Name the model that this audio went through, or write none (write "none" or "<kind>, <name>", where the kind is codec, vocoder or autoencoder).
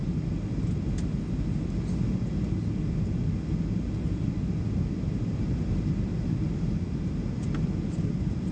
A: none